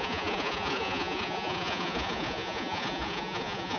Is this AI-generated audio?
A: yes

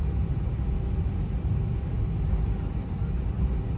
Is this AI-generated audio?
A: no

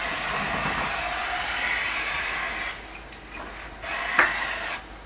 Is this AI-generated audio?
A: no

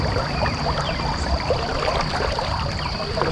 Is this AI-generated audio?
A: no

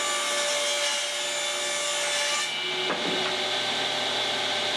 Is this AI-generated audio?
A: no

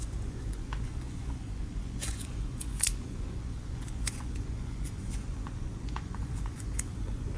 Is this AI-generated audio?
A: yes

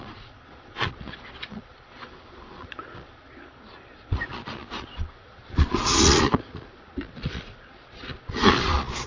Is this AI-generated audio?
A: yes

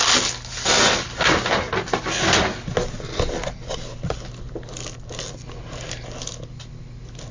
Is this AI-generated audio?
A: no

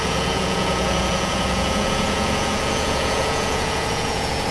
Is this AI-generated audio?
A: yes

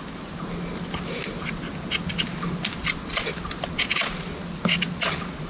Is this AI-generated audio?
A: no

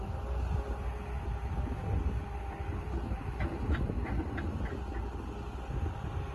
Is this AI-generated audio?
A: no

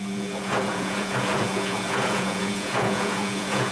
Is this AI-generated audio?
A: yes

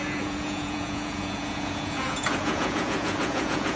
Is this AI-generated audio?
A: yes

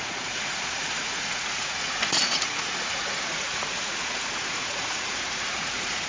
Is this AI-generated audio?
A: yes